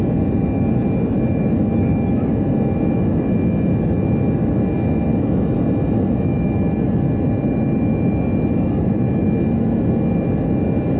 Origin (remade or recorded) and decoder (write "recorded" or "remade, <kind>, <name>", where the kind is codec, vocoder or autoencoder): recorded